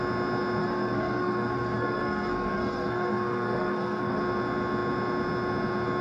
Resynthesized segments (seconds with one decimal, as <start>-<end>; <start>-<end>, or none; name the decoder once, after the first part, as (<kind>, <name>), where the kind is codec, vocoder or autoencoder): 0.6-4.2 (codec, SNAC)